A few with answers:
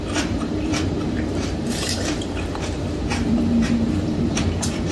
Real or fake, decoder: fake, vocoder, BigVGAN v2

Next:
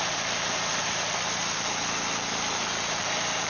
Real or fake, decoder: fake, vocoder, BigVGAN v2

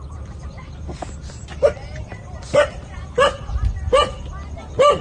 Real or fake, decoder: real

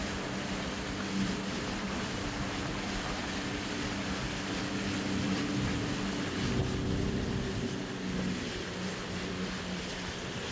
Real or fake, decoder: real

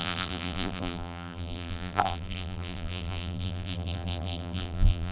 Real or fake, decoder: fake, vocoder, BigVGAN v2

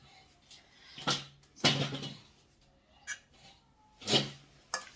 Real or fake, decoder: real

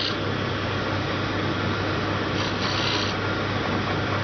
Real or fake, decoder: real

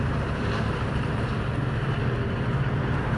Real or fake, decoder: fake, vocoder, BigVGAN v2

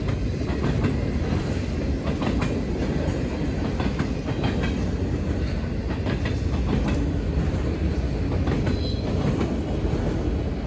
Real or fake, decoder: real